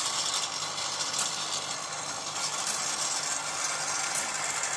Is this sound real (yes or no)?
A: yes